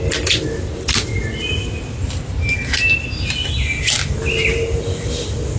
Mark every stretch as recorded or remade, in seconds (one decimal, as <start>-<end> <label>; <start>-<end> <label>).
0.0-5.6 recorded